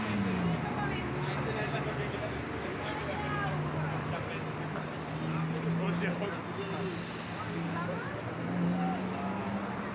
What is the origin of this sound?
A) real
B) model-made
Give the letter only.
A